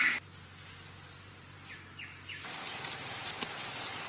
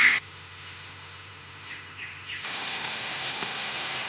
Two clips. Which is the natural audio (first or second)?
first